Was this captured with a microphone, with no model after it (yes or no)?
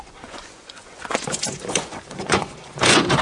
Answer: no